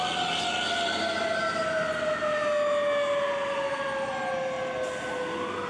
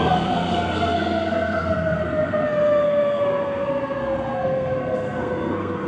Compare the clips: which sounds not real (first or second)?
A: second